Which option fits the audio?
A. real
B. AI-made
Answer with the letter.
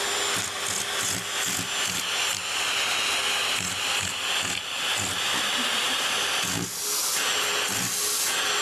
A